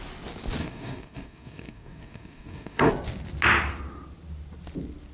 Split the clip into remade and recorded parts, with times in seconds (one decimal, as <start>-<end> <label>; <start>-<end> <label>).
0.0-0.6 recorded; 0.6-2.9 remade; 2.9-5.1 recorded